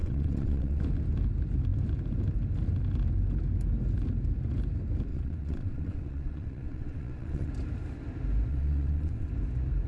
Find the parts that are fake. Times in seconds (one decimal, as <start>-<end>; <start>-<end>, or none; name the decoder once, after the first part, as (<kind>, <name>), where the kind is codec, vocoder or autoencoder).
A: 0.0-0.8 (vocoder, WaveNeXt); 5.1-7.5; 8.5-9.3